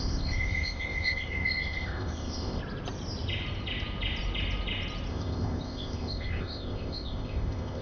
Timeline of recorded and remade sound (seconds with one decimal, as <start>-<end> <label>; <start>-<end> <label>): 0.0-2.6 remade; 2.6-5.1 recorded; 5.1-7.8 remade